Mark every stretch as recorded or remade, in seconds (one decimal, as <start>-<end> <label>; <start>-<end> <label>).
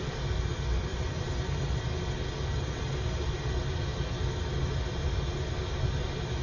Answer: 0.0-6.4 recorded